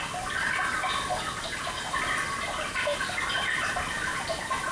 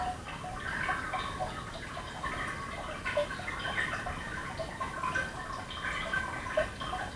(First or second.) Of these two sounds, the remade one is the first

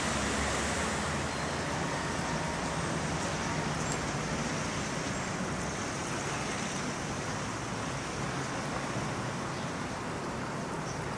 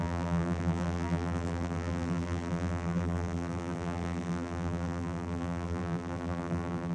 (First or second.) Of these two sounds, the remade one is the second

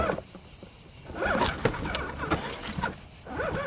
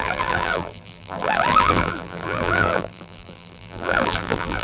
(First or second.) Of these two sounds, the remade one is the second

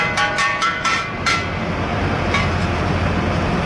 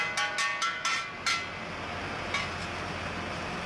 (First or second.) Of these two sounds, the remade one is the first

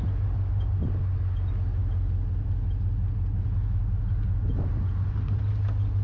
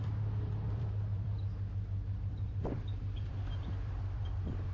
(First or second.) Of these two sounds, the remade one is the second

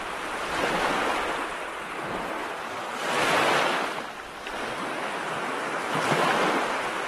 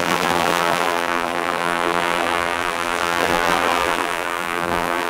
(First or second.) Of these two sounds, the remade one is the second